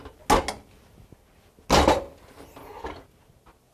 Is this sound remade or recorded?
recorded